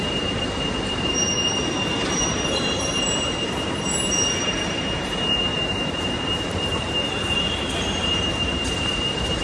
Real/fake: fake